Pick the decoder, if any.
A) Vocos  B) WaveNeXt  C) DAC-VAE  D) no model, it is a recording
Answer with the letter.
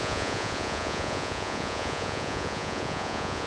A